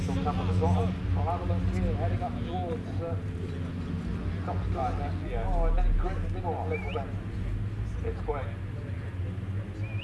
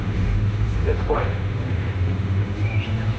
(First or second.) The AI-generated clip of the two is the second